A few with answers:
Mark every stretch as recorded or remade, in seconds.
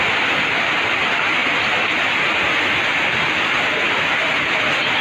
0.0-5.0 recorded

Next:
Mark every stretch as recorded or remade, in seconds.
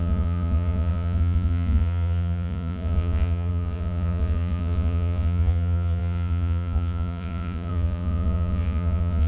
0.0-9.3 remade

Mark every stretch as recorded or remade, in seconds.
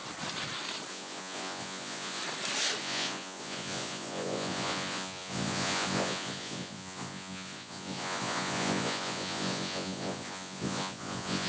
0.0-0.9 recorded; 0.9-2.2 remade; 2.2-2.8 recorded; 2.8-11.5 remade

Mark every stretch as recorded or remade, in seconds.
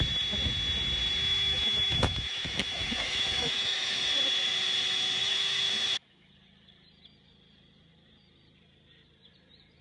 0.0-1.2 recorded; 1.2-4.0 remade; 4.0-5.2 recorded; 5.2-6.3 remade; 6.3-9.8 recorded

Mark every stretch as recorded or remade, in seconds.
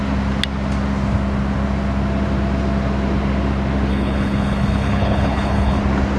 0.0-3.9 recorded; 3.9-5.8 remade; 5.8-6.2 recorded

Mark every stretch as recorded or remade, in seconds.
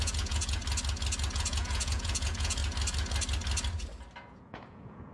0.0-0.6 remade; 0.6-1.3 recorded; 1.3-2.6 remade; 2.6-4.2 recorded; 4.2-5.1 remade